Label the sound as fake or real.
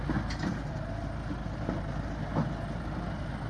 real